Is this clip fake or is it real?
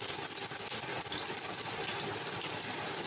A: real